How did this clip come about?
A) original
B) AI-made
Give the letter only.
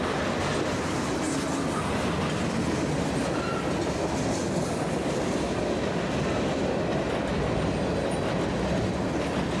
A